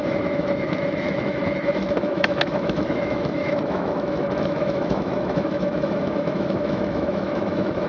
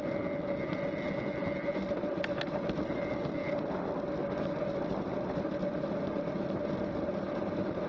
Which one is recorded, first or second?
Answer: second